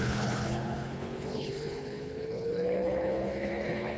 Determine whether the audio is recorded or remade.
remade